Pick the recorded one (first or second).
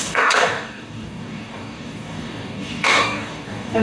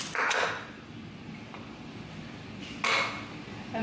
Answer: second